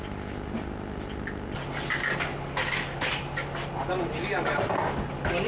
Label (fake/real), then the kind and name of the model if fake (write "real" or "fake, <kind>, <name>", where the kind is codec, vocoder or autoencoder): real